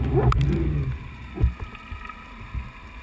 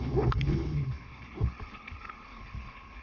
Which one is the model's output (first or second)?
second